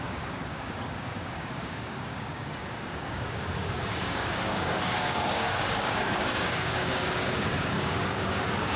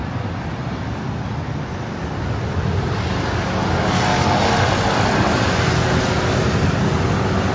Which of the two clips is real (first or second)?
second